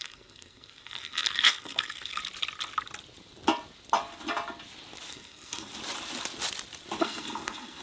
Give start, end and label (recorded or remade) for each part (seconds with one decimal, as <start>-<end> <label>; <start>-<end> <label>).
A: 0.0-2.2 remade; 2.2-5.1 recorded; 5.1-5.7 remade; 5.7-7.0 recorded; 7.0-7.8 remade